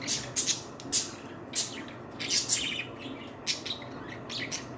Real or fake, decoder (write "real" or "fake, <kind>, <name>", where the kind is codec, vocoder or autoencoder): real